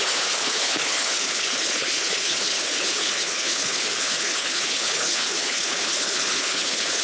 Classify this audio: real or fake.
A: fake